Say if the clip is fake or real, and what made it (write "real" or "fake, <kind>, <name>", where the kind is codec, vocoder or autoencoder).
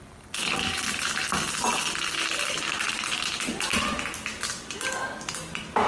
real